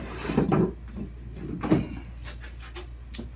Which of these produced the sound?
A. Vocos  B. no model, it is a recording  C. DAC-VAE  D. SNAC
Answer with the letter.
B